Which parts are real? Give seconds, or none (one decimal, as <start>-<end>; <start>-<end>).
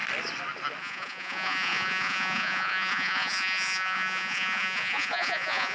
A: 0.0-0.8